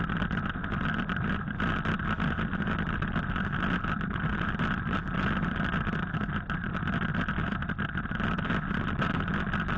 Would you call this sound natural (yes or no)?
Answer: yes